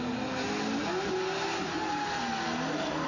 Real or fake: real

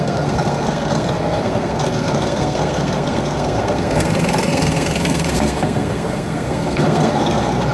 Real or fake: fake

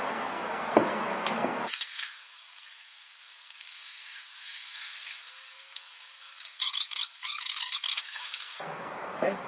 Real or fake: fake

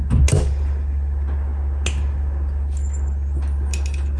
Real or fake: real